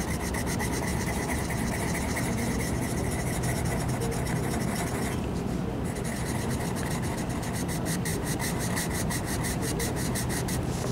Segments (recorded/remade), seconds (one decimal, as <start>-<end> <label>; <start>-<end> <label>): 0.0-0.9 recorded; 0.9-1.4 remade; 1.4-8.1 recorded; 8.1-10.3 remade; 10.3-10.9 recorded